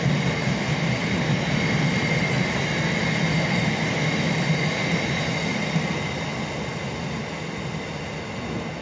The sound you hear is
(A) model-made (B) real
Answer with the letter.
B